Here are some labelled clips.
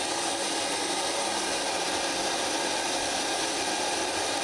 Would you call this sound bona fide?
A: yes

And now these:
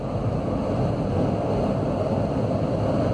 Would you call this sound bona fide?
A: yes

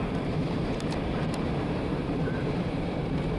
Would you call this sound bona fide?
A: no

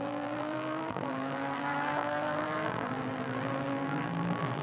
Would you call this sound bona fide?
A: no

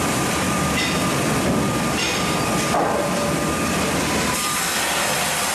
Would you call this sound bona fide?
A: no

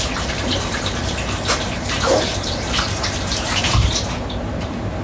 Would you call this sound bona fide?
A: no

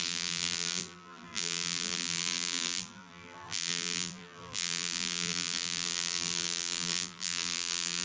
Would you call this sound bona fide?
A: no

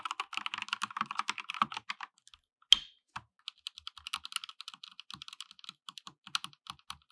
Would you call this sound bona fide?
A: yes